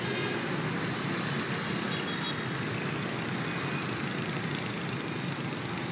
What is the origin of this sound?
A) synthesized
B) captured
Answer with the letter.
B